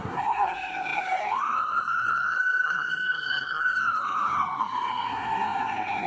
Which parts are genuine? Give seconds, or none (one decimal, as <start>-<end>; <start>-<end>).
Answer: none